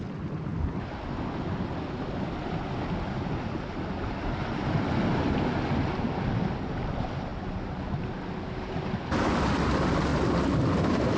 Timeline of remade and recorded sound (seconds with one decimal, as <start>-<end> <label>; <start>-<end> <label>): 0.0-11.2 recorded

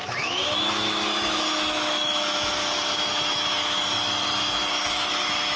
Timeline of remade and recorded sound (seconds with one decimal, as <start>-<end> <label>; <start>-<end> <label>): 0.0-3.9 remade; 3.9-4.8 recorded; 4.8-5.6 remade